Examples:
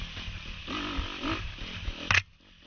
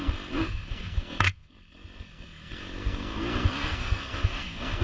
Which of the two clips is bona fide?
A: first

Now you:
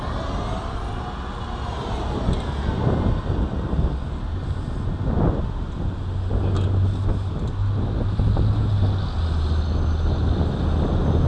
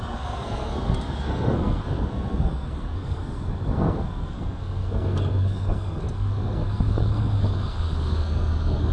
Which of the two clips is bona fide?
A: first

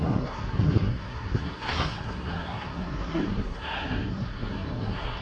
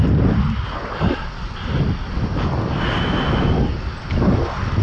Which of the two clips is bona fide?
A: second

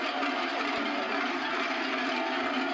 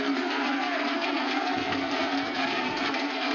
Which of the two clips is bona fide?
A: first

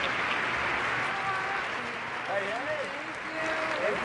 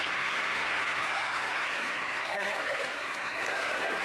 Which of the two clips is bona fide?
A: first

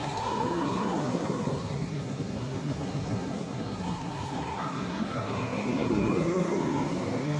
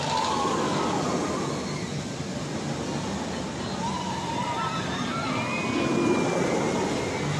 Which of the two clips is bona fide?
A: second